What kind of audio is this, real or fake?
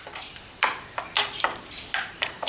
real